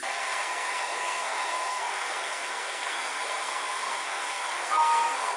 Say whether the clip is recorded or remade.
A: remade